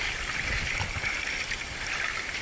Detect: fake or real real